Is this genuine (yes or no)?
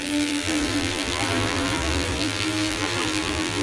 no